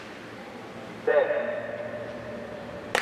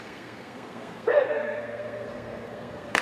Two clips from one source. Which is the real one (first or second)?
first